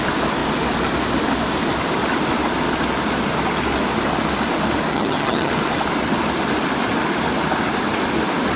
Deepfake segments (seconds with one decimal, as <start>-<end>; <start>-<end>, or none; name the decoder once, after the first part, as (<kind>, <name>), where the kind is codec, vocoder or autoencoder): 4.9-5.5 (vocoder, HiFi-GAN)